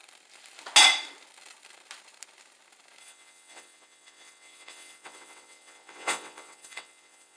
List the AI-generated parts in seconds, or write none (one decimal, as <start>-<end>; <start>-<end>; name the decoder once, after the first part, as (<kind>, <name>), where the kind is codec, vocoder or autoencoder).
3.0-7.4 (vocoder, WaveNeXt)